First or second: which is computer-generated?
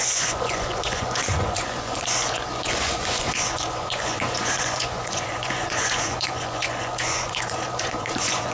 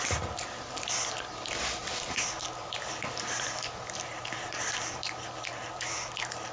first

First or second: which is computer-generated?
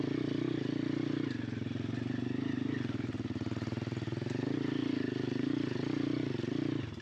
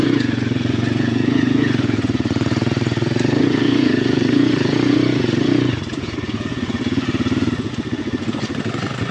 second